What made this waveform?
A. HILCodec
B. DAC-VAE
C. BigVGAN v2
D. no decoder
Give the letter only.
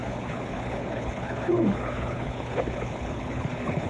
A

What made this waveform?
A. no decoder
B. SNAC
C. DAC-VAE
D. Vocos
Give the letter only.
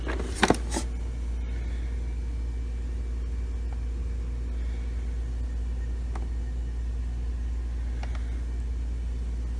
A